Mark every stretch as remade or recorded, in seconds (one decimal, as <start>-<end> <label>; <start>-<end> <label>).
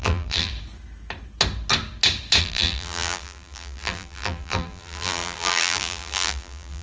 0.0-0.5 remade; 0.5-2.4 recorded; 2.4-6.8 remade